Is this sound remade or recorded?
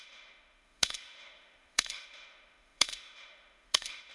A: remade